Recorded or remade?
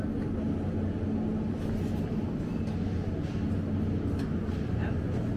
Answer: recorded